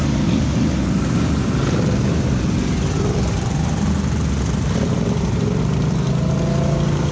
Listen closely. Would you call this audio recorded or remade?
recorded